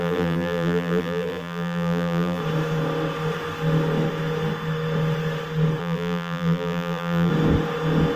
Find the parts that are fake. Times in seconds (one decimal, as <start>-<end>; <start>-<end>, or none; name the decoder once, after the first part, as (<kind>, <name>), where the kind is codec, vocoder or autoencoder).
0.0-2.4 (vocoder, BigVGAN v2); 5.8-7.3